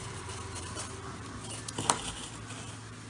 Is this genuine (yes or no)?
yes